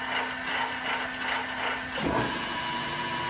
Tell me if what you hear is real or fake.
real